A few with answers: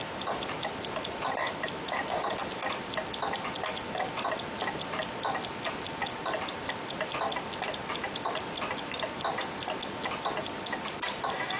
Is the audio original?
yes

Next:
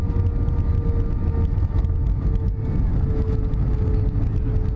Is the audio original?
yes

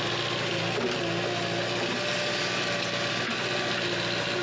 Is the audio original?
yes